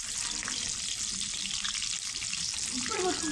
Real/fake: real